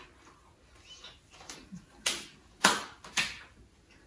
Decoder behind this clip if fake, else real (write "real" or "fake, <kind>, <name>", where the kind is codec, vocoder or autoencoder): real